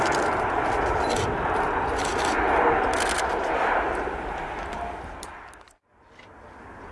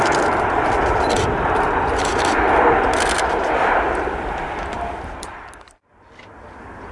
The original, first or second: first